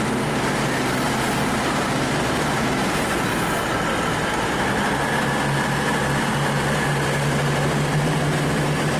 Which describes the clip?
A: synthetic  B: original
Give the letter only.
B